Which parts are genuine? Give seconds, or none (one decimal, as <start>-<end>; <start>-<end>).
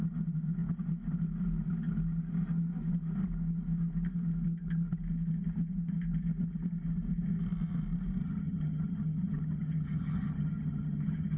0.0-8.2